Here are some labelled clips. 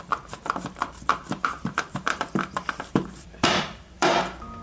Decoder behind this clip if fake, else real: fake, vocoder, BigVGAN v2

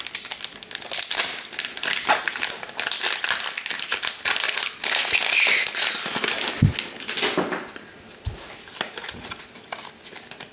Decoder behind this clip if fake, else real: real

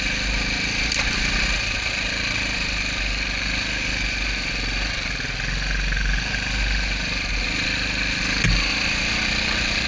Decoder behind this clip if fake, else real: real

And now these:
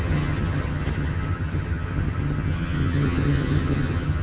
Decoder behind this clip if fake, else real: fake, vocoder, HiFi-GAN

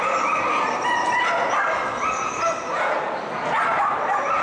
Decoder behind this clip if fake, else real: real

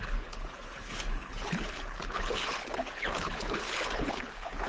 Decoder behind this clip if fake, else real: fake, codec, HILCodec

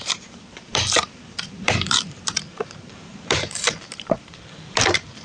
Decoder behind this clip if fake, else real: fake, vocoder, BigVGAN v2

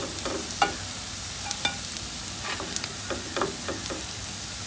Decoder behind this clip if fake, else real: real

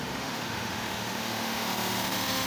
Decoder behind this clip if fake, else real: fake, autoencoder, DAC-VAE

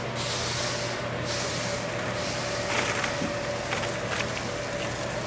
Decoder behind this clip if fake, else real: real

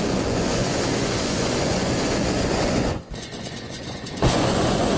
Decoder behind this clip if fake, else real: fake, vocoder, Vocos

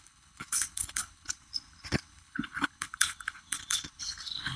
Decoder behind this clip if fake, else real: fake, codec, HILCodec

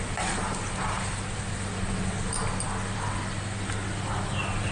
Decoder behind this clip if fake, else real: real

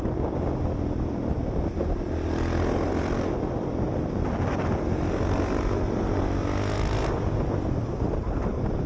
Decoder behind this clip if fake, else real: real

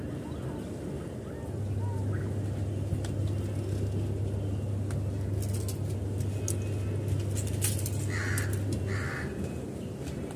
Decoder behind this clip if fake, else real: real